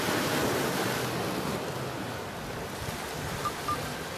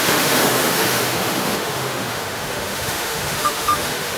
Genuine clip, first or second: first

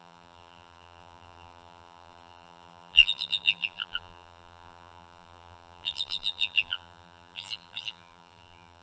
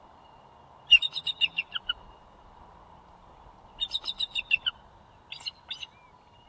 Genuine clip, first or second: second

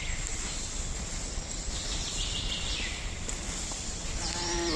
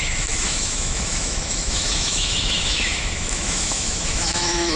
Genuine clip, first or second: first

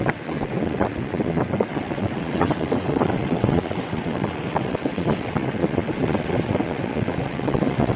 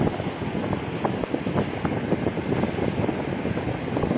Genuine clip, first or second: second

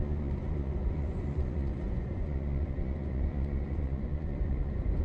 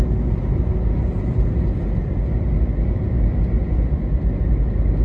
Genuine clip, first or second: second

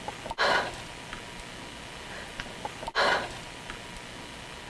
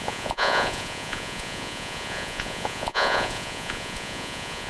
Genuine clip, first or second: first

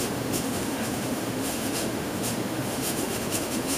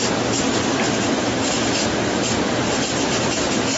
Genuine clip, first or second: second